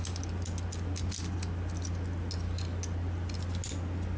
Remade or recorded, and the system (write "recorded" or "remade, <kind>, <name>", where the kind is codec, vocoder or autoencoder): recorded